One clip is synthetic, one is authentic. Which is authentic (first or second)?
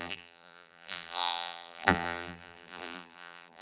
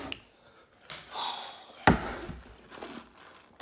second